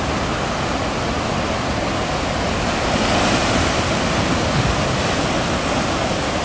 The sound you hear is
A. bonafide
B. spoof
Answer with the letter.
A